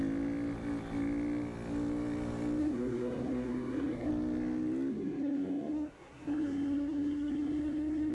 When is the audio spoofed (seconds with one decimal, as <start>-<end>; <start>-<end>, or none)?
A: 2.6-4.1; 4.9-8.1

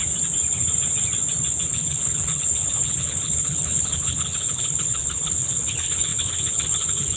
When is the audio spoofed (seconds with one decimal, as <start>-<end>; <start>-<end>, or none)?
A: 1.7-7.2

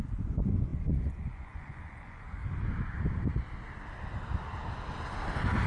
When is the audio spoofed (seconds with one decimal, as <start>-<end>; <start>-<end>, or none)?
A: 0.0-2.4

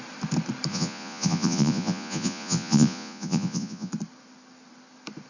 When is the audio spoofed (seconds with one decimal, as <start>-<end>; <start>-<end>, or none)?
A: 0.7-3.9

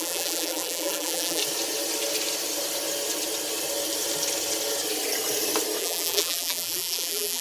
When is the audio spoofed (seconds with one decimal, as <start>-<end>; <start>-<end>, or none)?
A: 0.0-1.4; 5.8-7.4

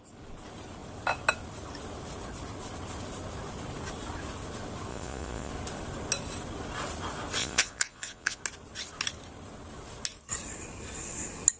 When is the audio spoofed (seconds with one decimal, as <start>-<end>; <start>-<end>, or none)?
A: 4.9-5.5; 7.4-8.4

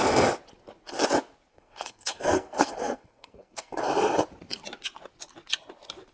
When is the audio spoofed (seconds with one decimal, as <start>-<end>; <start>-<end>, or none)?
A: 1.5-3.8

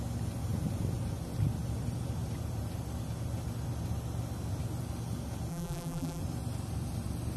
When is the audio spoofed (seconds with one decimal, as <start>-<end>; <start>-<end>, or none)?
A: 5.5-6.2